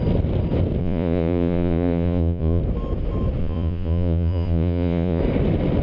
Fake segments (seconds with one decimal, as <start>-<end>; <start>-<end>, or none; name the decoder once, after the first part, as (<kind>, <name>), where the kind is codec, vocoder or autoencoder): 0.8-2.6 (vocoder, Vocos); 3.4-5.2